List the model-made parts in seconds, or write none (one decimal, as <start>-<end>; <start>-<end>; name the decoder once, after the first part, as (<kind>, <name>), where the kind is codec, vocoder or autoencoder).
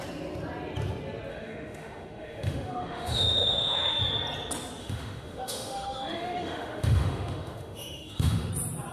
1.3-4.0 (autoencoder, DAC-VAE); 4.8-8.5